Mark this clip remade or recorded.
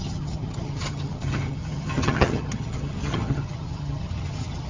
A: remade